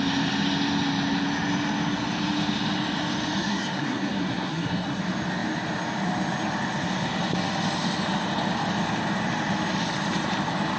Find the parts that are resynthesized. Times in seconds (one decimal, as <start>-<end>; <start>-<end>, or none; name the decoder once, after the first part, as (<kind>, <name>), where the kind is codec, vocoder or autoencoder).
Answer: 3.4-5.0 (codec, SNAC)